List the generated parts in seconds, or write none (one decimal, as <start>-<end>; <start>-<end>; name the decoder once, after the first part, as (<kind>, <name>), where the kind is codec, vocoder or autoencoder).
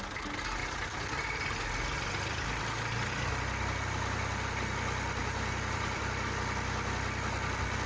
5.2-6.0 (vocoder, BigVGAN v2)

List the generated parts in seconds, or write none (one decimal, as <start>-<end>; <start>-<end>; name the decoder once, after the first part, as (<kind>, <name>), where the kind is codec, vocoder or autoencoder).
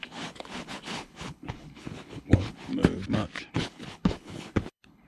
0.0-2.7 (codec, HILCodec); 3.5-5.1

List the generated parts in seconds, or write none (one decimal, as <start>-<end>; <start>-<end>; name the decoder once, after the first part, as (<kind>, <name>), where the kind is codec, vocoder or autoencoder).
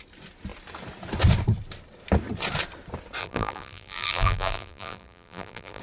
3.2-5.8 (vocoder, BigVGAN v2)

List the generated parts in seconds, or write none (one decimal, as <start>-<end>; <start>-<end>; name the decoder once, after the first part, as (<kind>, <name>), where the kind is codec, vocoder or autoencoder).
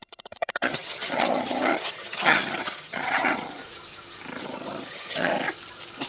0.0-3.6 (vocoder, HiFi-GAN); 4.4-5.3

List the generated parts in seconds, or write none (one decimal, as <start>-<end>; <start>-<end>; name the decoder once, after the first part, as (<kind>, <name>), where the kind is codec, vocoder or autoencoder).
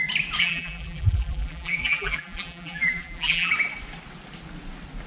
0.4-3.5 (vocoder, BigVGAN v2)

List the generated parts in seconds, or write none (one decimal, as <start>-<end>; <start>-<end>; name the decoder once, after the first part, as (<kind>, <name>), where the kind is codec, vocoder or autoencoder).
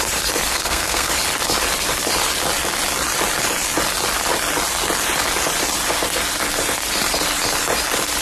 0.5-1.1 (codec, SNAC)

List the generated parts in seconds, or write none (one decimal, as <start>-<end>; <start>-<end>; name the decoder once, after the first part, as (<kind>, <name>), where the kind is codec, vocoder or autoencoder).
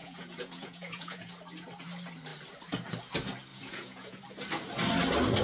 0.0-1.3 (vocoder, Vocos); 3.5-4.2